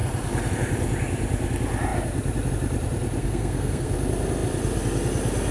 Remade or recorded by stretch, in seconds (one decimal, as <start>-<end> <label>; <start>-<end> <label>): 0.0-3.2 recorded; 3.2-3.9 remade; 3.9-5.5 recorded